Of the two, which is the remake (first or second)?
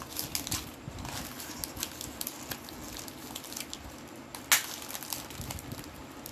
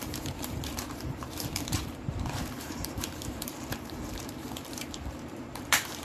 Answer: second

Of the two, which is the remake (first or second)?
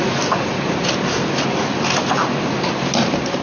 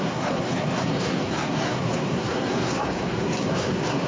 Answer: second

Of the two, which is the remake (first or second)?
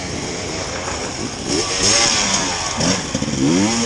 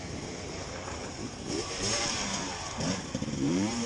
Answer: second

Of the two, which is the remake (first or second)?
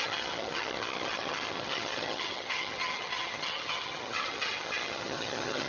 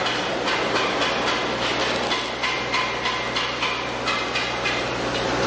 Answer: first